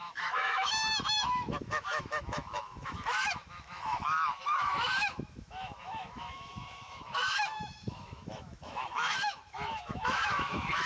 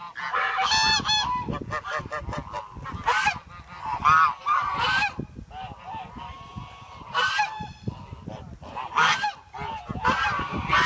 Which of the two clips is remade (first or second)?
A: first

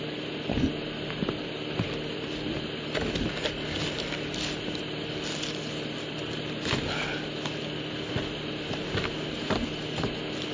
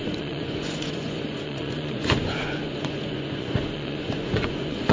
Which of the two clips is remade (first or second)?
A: second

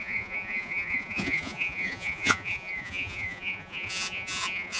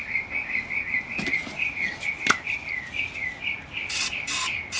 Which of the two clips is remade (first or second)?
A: first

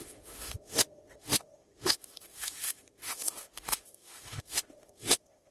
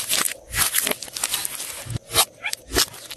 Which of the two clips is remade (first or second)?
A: first